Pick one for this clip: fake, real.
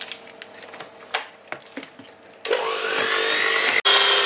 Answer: real